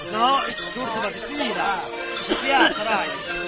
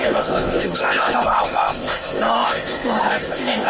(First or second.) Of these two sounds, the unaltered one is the first